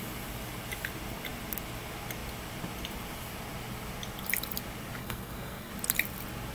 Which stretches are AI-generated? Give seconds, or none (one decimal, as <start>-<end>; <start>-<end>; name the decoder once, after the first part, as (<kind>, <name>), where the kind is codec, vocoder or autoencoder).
5.0-5.7 (codec, SNAC)